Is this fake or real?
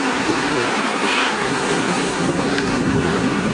fake